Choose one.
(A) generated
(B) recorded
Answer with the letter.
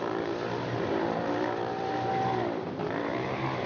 A